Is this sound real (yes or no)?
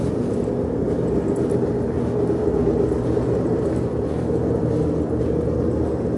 yes